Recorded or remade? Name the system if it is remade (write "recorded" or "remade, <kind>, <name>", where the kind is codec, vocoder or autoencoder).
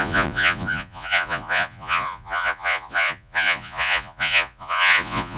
remade, vocoder, Vocos